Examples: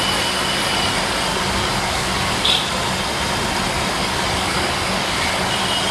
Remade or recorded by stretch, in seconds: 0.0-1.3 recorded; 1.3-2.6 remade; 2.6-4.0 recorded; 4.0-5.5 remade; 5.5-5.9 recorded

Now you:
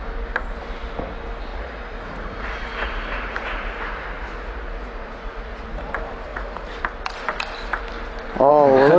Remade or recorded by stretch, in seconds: 0.0-1.5 recorded; 1.5-5.7 remade; 5.7-6.3 recorded; 6.3-6.8 remade; 6.8-9.0 recorded

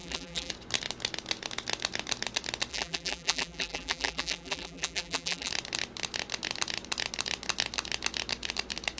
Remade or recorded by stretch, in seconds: 0.0-0.5 remade; 0.5-2.7 recorded; 2.7-5.5 remade; 5.5-9.0 recorded